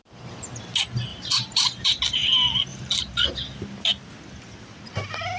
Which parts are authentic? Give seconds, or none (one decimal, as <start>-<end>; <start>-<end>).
0.6-1.1; 2.0-2.7; 3.3-5.4